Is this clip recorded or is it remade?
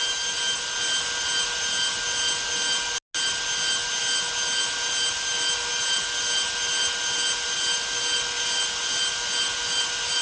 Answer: recorded